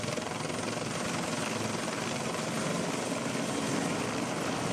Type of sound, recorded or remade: recorded